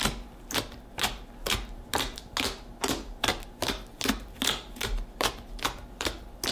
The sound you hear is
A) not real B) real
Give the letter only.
B